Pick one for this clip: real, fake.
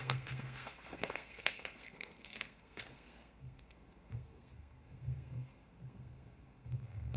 fake